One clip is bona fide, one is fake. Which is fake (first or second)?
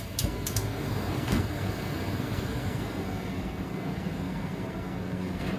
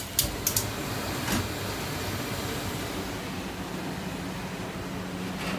first